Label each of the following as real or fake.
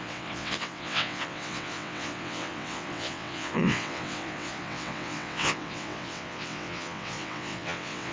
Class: fake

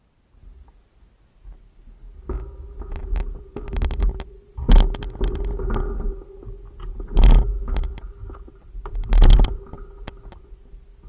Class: real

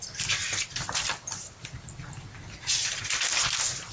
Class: real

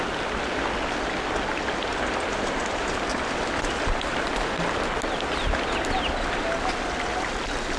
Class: real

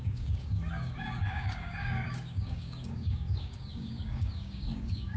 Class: fake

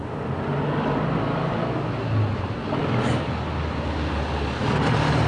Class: real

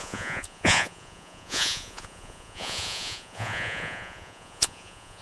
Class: fake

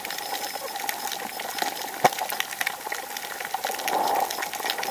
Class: real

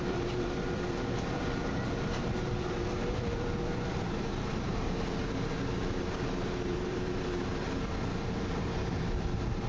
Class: fake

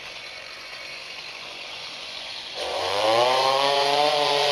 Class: fake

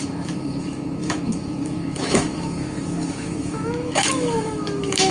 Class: fake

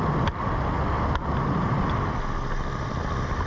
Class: real